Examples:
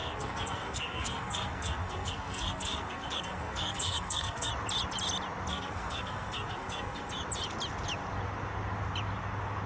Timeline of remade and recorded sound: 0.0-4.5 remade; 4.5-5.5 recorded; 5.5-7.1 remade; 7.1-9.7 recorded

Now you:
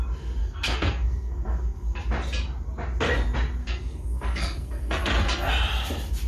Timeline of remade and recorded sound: 0.0-0.4 recorded; 0.4-2.0 remade; 2.0-3.6 recorded; 3.6-5.5 remade; 5.5-6.3 recorded

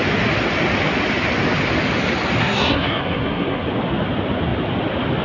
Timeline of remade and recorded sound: 0.0-2.4 recorded; 2.4-3.7 remade; 3.7-5.2 recorded

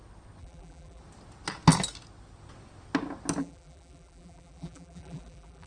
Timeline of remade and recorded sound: 0.0-0.4 recorded; 0.4-1.0 remade; 1.0-3.4 recorded; 3.4-5.7 remade

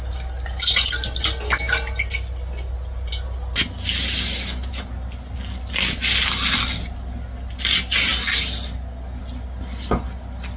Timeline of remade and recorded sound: 0.0-10.6 recorded

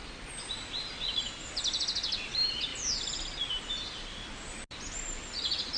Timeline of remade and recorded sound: 0.0-5.8 recorded

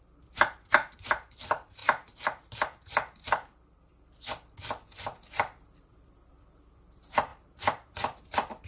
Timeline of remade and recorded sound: 0.0-8.7 remade